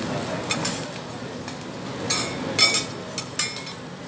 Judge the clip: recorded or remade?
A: recorded